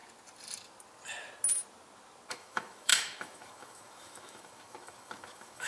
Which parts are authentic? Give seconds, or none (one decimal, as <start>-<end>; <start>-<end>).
0.0-2.3